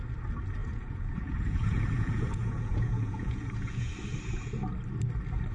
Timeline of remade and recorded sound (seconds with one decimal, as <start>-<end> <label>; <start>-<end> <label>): 0.0-0.6 recorded; 0.6-3.9 remade; 3.9-5.5 recorded